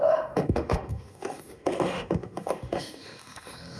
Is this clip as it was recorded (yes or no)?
no